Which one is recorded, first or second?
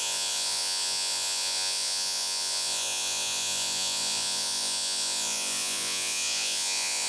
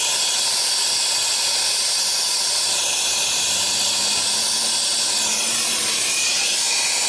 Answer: second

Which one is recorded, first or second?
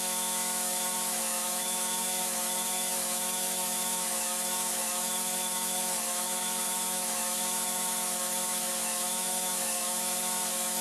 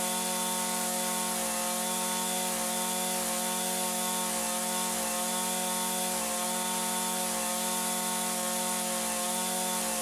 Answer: second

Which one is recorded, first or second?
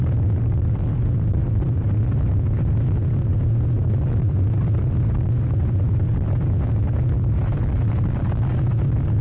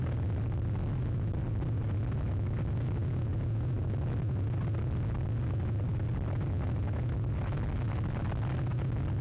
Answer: second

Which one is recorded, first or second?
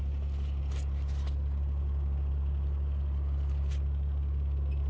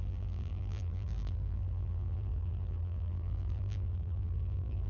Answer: first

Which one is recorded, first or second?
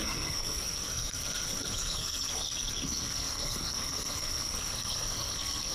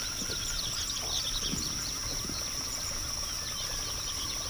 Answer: second